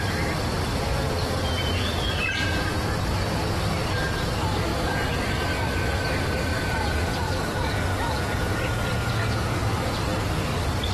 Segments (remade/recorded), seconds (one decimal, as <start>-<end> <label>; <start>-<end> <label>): 0.0-0.7 recorded; 0.7-3.5 remade; 3.5-4.7 recorded; 4.7-5.3 remade; 5.3-6.5 recorded; 6.5-9.6 remade; 9.6-10.9 recorded